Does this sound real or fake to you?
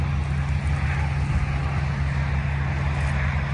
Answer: real